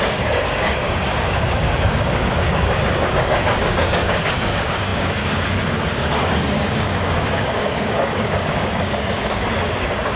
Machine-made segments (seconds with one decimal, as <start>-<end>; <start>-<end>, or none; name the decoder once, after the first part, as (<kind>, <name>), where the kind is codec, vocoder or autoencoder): 0.0-10.2 (codec, DAC)